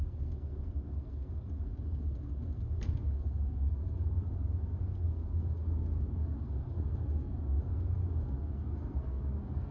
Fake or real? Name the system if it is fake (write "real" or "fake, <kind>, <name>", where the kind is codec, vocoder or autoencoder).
fake, codec, SNAC